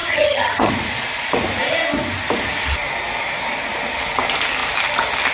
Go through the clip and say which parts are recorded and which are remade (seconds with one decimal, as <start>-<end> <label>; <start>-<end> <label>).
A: 0.0-0.7 remade; 0.7-5.3 recorded